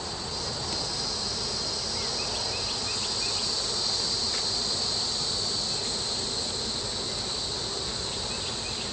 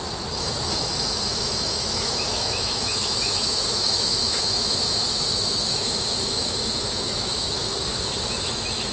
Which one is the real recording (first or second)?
first